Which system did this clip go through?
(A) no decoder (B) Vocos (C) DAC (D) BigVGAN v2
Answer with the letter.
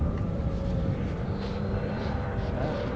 D